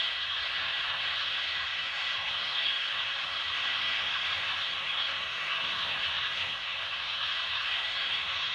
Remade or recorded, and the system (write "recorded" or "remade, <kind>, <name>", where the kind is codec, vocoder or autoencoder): remade, codec, SNAC